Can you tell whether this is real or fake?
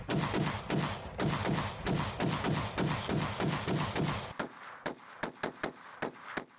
real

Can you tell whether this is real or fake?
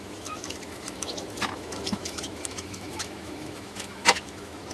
fake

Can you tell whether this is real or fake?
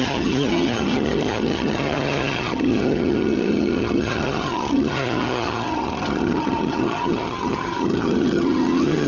fake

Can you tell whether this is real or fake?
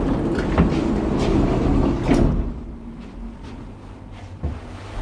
real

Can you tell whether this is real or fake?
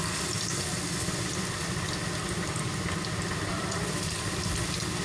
real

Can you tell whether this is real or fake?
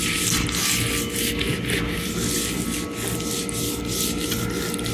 real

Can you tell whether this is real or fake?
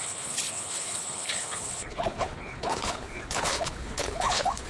fake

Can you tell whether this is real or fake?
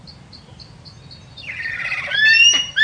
fake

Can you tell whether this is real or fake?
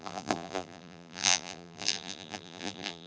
fake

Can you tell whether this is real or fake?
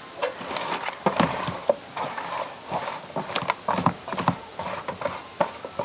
real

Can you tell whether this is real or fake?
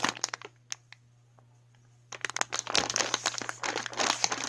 real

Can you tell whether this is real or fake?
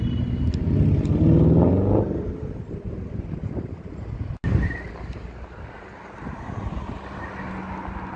real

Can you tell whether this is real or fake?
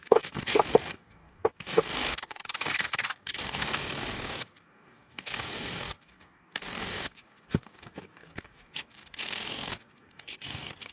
fake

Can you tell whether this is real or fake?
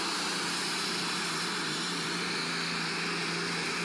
real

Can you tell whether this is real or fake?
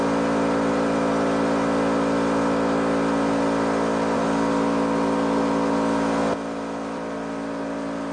real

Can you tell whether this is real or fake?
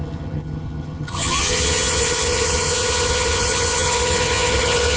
fake